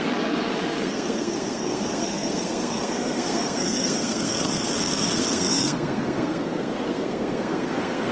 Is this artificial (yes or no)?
yes